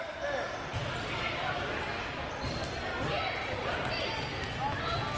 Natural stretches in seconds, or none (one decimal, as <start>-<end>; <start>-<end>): 0.0-0.7; 3.8-5.2

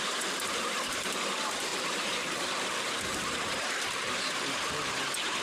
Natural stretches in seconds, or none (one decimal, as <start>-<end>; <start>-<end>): 0.0-1.7; 4.9-5.4

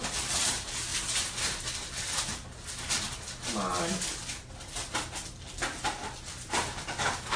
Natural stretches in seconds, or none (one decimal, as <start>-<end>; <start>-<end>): 0.0-7.4